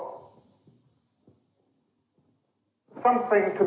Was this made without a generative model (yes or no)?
yes